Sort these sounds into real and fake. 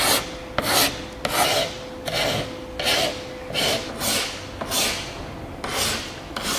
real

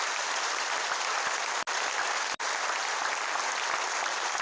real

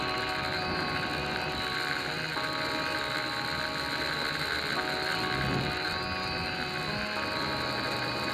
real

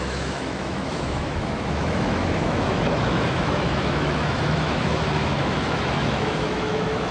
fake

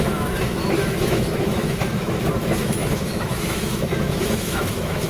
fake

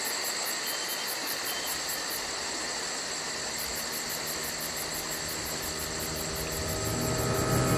real